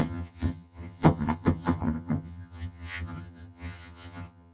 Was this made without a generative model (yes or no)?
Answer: no